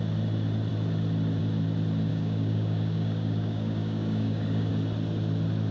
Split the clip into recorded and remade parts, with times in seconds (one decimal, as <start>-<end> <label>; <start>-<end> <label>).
0.0-2.1 recorded; 2.1-4.7 remade; 4.7-5.7 recorded